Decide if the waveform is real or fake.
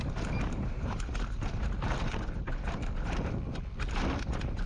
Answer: real